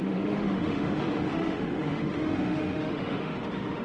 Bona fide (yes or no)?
no